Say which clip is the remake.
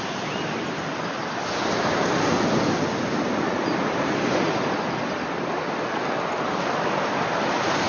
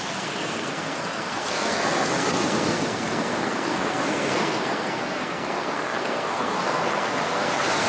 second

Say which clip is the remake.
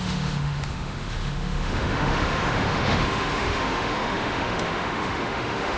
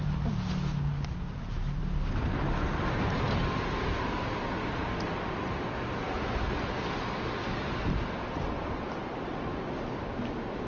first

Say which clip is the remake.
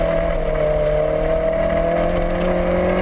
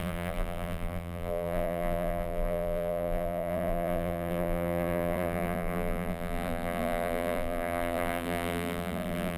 second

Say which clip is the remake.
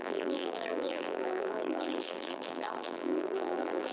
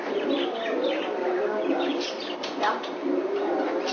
first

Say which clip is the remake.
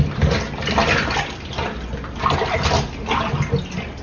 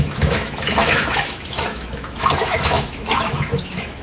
second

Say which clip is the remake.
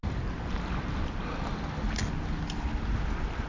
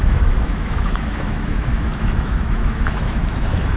second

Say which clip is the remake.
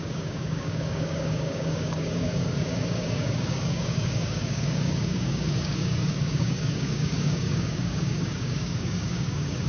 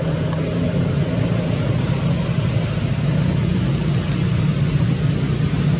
first